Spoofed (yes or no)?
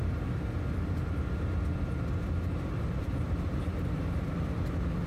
no